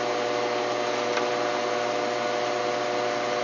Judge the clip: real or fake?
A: real